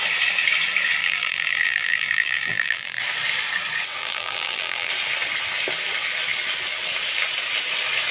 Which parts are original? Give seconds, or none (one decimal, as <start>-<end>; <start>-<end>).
0.0-1.0; 3.0-4.0; 4.9-8.1